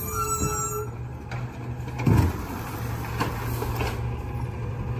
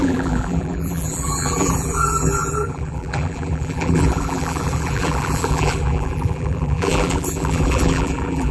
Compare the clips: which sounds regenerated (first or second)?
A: second